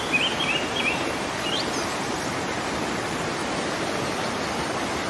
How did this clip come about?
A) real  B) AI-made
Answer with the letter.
A